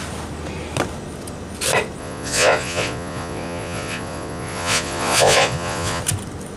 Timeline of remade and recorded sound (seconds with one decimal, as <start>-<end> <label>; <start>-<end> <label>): 0.0-2.0 recorded; 2.0-6.0 remade; 6.0-6.6 recorded